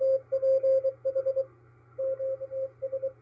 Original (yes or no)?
yes